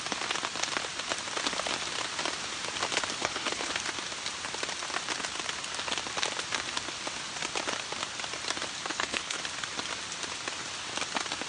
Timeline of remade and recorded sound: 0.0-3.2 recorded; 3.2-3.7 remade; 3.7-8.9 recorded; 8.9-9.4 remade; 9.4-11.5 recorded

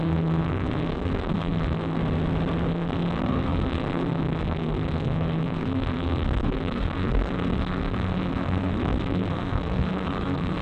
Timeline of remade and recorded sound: 0.0-2.0 remade; 2.0-2.7 recorded; 2.7-10.6 remade